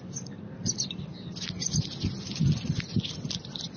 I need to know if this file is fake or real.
real